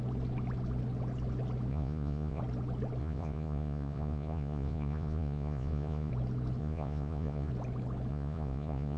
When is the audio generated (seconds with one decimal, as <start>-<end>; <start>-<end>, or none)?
1.7-2.4; 3.0-6.1; 6.6-7.5; 8.1-9.0